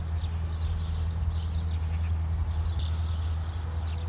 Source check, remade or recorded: recorded